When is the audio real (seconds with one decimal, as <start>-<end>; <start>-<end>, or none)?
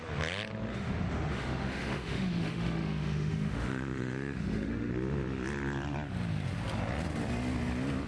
0.0-0.7; 4.9-8.1